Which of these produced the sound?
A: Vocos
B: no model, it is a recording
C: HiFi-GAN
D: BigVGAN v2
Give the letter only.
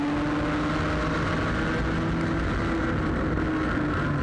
B